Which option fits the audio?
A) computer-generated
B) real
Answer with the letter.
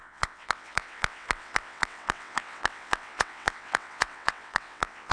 A